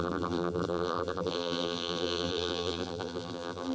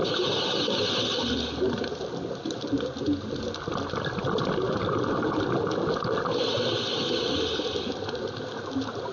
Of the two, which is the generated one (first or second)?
first